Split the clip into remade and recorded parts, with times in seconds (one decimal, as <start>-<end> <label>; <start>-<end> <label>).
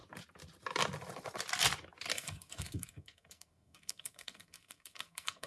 0.0-2.1 recorded; 2.1-5.5 remade